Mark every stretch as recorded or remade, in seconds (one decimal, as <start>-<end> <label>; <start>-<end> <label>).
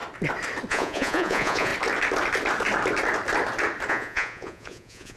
0.0-0.7 recorded; 0.7-1.7 remade; 1.7-3.9 recorded; 3.9-5.2 remade